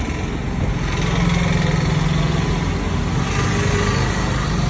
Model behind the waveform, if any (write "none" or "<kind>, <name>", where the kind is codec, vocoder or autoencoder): none